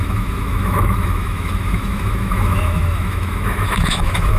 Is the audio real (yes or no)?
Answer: no